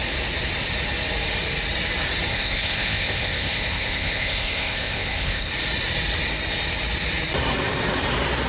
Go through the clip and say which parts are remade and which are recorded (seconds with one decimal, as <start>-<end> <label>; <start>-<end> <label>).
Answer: 0.0-2.3 recorded; 2.3-5.5 remade; 5.5-8.5 recorded